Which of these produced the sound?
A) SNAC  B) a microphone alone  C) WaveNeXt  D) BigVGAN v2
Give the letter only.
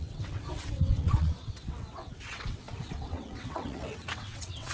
C